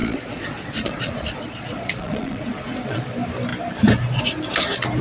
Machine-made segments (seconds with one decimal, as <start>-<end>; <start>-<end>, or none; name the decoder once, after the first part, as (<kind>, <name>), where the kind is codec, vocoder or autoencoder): 0.0-3.0 (vocoder, Vocos)